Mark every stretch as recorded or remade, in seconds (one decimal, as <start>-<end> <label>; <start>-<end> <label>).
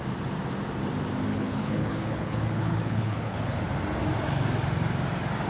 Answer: 0.0-1.3 recorded; 1.3-3.6 remade; 3.6-5.5 recorded